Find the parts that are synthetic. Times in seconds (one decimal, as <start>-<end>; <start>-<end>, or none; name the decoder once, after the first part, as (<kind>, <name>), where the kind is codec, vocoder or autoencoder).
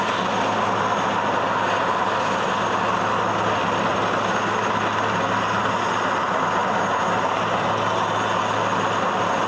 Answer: none